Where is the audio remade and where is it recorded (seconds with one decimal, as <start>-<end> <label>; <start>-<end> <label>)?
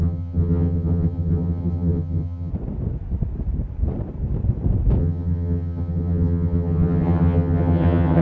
0.0-2.5 remade; 2.5-5.0 recorded; 5.0-8.2 remade